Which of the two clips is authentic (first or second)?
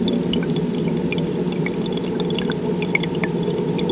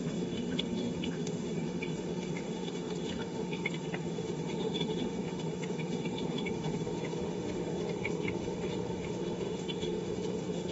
first